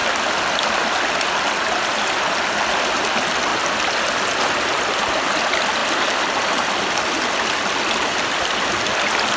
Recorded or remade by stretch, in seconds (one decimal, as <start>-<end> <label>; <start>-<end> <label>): 0.0-9.4 recorded